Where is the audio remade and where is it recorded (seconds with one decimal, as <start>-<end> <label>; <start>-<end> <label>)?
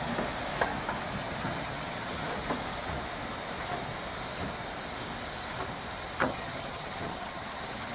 0.0-1.2 recorded; 1.2-2.3 remade; 2.3-6.2 recorded; 6.2-7.9 remade